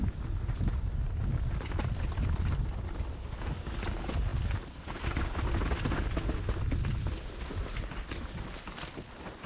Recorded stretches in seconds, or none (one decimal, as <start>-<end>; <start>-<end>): 0.0-9.5